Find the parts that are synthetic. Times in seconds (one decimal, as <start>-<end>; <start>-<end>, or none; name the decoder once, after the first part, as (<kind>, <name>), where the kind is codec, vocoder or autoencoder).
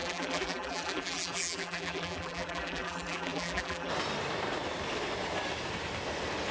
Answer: 0.0-3.9 (vocoder, BigVGAN v2)